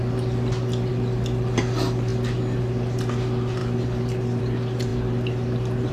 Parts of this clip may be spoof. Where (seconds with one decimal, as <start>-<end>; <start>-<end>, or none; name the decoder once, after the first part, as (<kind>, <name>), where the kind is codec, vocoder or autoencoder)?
none